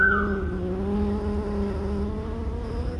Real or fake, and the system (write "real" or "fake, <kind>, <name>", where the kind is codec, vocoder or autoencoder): real